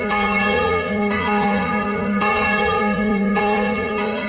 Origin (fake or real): fake